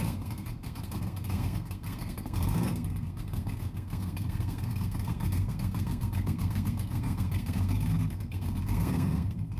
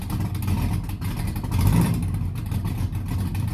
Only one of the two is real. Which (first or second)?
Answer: second